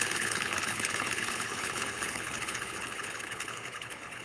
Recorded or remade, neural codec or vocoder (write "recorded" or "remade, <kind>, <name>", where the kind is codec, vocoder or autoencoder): remade, codec, HILCodec